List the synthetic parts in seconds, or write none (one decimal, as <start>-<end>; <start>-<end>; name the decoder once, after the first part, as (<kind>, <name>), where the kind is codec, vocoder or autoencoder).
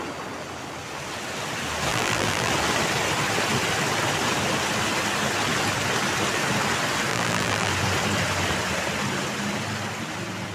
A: 1.9-2.5 (vocoder, BigVGAN v2); 7.1-7.7